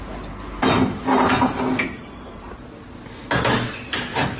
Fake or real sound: real